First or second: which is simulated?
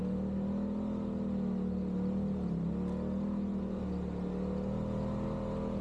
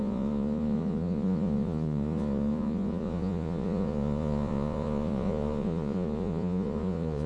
second